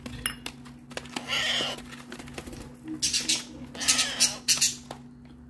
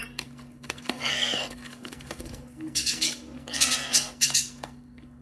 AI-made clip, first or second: second